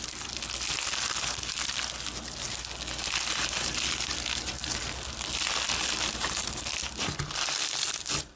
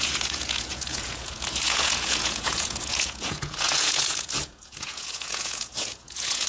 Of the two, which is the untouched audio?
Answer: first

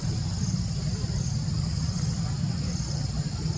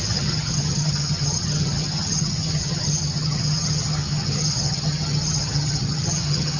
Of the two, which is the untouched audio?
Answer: first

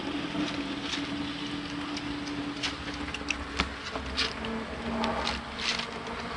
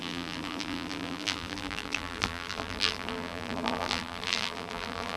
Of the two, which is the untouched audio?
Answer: first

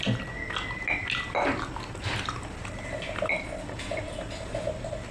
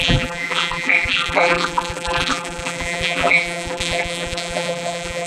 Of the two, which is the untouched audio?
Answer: first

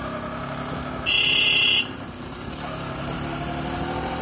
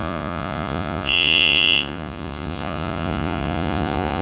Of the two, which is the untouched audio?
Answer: first